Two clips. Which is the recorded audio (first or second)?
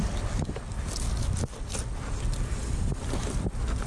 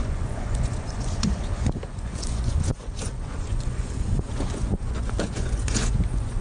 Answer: first